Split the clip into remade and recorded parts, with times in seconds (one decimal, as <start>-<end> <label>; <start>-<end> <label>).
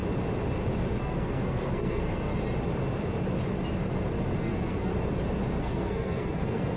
0.0-1.0 recorded; 1.0-2.3 remade; 2.3-4.4 recorded; 4.4-4.9 remade; 4.9-5.6 recorded; 5.6-6.8 remade